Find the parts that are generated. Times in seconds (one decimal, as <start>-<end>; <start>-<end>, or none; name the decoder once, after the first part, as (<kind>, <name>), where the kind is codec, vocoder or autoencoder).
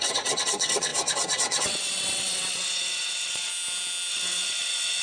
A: 0.0-3.5 (vocoder, WaveNeXt); 4.1-5.0